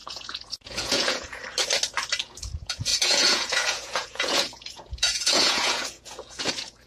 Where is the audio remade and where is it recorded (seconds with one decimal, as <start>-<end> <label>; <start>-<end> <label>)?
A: 0.0-1.4 remade; 1.4-2.2 recorded; 2.2-6.9 remade